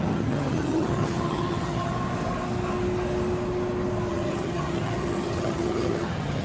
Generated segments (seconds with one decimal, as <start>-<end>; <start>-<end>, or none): 0.0-1.9; 4.1-6.4